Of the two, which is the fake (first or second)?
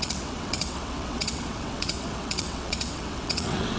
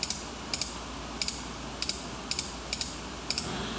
first